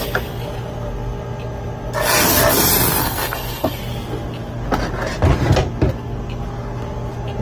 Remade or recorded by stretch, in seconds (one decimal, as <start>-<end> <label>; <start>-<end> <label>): 0.0-3.0 recorded; 3.0-3.8 remade; 3.8-7.4 recorded